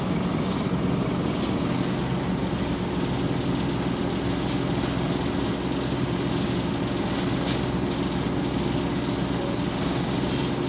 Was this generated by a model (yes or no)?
no